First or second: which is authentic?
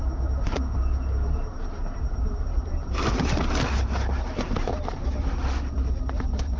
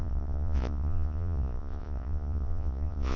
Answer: first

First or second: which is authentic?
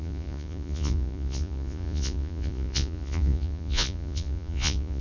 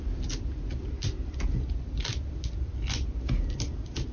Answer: second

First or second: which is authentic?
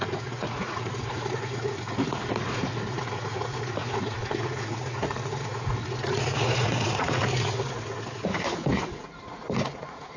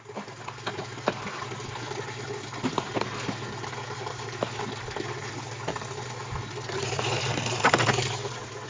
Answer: second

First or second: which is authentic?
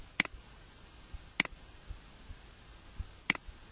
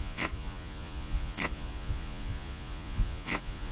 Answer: first